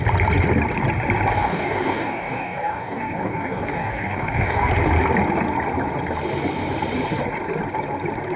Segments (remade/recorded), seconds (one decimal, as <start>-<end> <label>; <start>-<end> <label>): 0.0-1.4 recorded; 1.4-4.7 remade; 4.7-8.4 recorded